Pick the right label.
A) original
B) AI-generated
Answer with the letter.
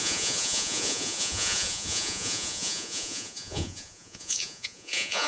B